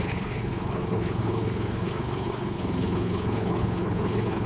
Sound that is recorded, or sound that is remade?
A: remade